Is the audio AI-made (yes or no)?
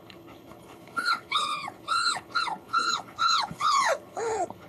yes